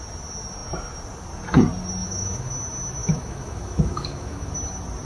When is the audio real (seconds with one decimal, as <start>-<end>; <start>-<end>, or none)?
0.0-2.0; 2.5-3.0; 4.5-5.1